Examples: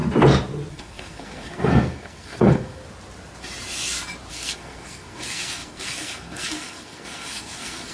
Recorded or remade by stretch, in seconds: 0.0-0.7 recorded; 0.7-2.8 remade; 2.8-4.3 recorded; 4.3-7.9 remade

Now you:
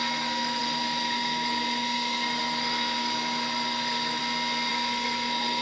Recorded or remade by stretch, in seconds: 0.0-4.2 remade; 4.2-4.7 recorded; 4.7-5.6 remade

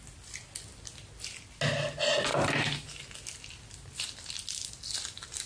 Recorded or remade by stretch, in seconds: 0.0-5.5 recorded